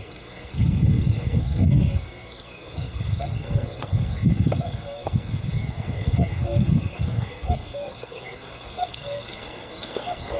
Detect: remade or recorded remade